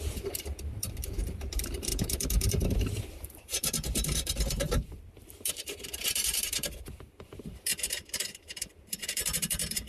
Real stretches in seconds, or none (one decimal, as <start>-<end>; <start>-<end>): none

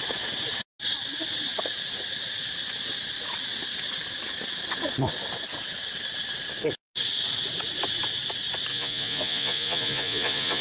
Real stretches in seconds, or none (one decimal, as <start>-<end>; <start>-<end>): 0.0-8.7

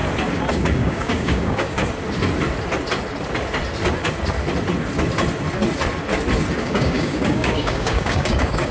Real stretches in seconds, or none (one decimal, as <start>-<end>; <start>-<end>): 0.0-0.5; 1.8-6.6